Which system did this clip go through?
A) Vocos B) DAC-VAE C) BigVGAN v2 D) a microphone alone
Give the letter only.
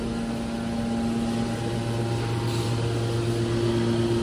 D